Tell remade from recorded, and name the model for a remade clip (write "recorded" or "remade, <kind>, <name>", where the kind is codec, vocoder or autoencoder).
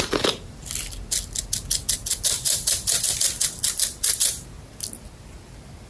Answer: recorded